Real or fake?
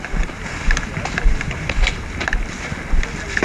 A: real